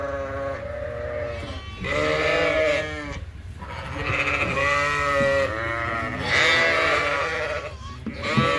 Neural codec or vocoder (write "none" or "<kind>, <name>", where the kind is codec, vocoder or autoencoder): none